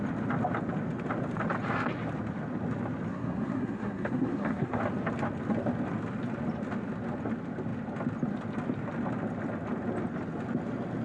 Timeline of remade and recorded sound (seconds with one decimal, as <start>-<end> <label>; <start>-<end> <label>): 0.0-3.1 recorded; 3.1-4.8 remade; 4.8-11.0 recorded